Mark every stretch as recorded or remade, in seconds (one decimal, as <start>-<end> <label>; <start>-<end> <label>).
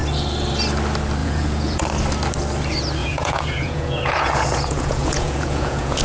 0.0-1.2 recorded; 1.2-1.8 remade; 1.8-3.0 recorded; 3.0-6.0 remade